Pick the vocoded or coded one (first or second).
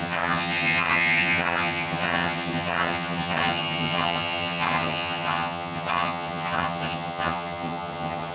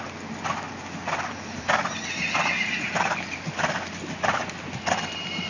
first